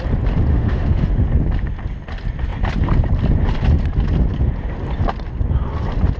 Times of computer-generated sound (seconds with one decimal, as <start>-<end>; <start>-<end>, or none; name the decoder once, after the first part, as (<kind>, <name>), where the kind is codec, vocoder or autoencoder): 0.5-1.1 (autoencoder, DAC-VAE)